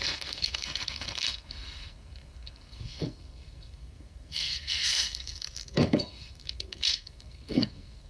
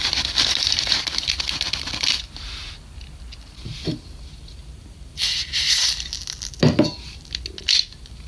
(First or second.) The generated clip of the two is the first